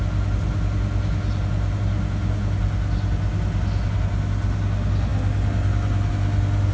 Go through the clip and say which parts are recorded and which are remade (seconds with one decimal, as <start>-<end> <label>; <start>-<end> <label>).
0.0-6.7 recorded